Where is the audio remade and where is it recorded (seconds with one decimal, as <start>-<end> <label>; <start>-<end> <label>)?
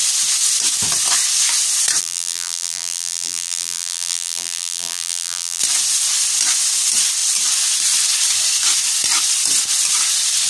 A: 0.0-2.0 recorded; 2.0-5.6 remade; 5.6-10.5 recorded